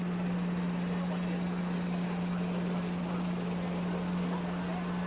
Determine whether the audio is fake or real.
real